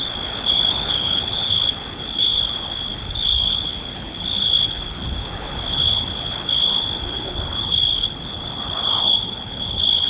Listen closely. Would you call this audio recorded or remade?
remade